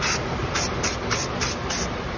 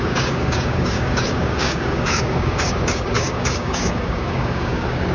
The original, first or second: first